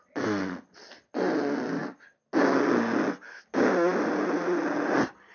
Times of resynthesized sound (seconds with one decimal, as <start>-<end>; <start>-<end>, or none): none